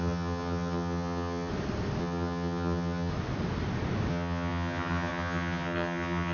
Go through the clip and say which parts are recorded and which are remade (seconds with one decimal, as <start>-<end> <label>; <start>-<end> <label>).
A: 0.0-1.5 remade; 1.5-2.0 recorded; 2.0-3.1 remade; 3.1-4.1 recorded; 4.1-6.3 remade